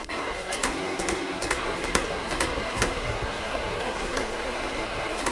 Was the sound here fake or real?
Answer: fake